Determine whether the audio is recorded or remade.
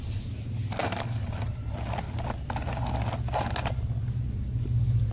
recorded